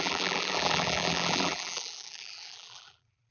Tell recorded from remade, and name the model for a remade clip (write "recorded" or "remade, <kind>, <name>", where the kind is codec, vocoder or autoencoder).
remade, vocoder, BigVGAN v2